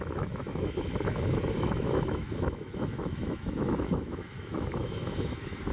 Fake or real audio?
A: fake